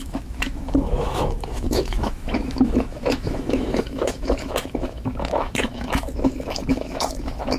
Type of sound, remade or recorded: remade